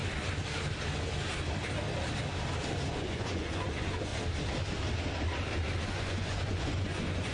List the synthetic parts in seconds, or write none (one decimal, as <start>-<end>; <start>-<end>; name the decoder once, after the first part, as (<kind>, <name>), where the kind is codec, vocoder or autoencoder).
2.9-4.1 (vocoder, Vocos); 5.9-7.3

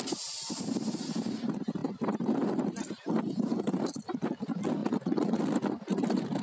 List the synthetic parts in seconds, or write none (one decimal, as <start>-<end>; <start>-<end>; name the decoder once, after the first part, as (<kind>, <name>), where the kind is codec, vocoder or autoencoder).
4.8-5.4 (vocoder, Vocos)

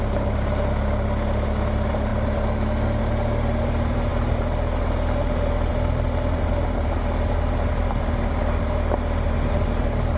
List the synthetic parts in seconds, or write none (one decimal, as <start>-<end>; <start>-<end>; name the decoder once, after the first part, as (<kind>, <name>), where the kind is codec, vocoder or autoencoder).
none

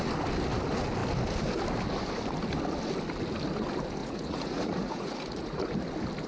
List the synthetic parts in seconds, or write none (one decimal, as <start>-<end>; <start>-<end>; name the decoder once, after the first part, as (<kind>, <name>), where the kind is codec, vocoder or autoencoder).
4.0-5.7 (vocoder, Vocos)

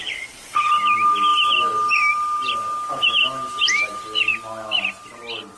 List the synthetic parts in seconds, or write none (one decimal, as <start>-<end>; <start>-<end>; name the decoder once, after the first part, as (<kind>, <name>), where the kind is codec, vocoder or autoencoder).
0.0-0.7 (vocoder, Vocos)

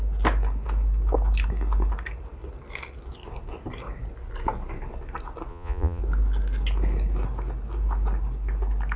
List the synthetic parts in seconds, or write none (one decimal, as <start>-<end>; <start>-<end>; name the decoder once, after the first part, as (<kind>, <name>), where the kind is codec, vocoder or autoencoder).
5.5-6.0 (vocoder, Vocos)

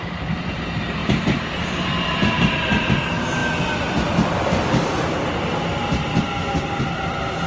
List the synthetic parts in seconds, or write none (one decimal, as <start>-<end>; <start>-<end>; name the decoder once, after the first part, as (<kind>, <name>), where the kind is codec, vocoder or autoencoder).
none

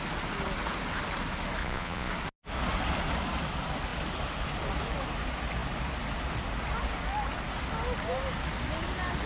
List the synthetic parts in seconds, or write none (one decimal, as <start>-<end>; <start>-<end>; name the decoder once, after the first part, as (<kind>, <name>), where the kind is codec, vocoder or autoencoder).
1.6-2.1 (vocoder, Vocos)